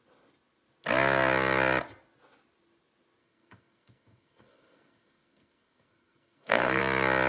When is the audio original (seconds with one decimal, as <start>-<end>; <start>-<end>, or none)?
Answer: 0.0-3.2; 6.8-7.3